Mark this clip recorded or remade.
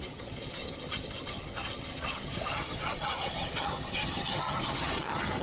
remade